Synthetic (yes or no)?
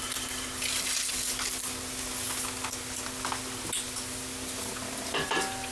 no